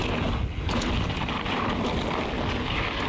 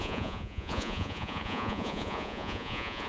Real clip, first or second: first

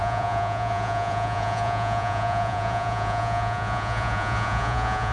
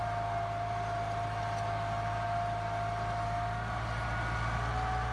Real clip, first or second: second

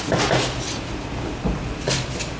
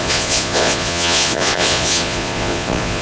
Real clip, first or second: first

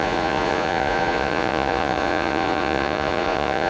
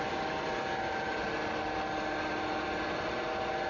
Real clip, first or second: second